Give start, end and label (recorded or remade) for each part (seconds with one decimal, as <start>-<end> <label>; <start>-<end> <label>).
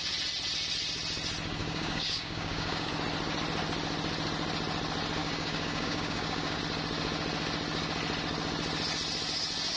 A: 0.0-1.6 recorded; 1.6-2.9 remade; 2.9-5.2 recorded; 5.2-6.6 remade; 6.6-9.8 recorded